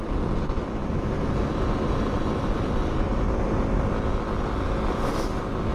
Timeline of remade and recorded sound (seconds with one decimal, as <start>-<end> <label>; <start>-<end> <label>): 0.0-5.7 recorded